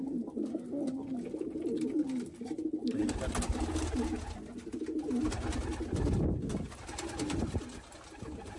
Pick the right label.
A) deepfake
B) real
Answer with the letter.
B